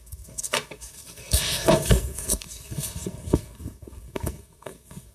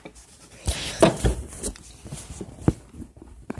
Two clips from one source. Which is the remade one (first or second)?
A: first